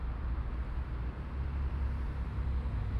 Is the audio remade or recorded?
recorded